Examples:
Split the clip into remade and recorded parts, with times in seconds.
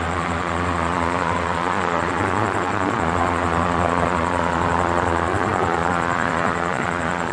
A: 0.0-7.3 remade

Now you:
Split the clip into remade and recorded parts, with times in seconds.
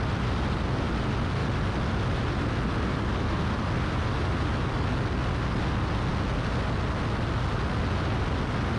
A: 0.0-8.8 recorded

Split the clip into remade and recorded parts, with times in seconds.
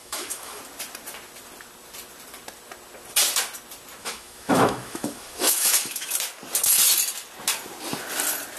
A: 0.0-0.6 remade; 0.6-4.0 recorded; 4.0-6.1 remade; 6.1-8.6 recorded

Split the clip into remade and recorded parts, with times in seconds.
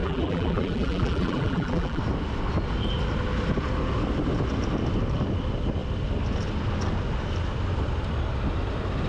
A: 0.0-2.0 remade; 2.0-9.1 recorded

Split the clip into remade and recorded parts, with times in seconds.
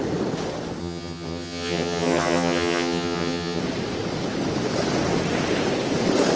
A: 0.0-0.8 recorded; 0.8-3.6 remade; 3.6-6.4 recorded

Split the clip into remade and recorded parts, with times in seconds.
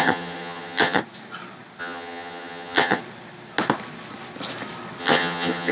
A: 0.0-1.0 remade; 1.0-1.8 recorded; 1.8-3.0 remade; 3.0-5.0 recorded; 5.0-5.7 remade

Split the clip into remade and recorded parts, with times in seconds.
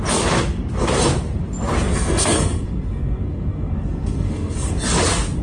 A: 0.0-1.9 recorded; 1.9-4.7 remade; 4.7-5.4 recorded